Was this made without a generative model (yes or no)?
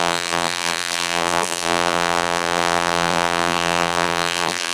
no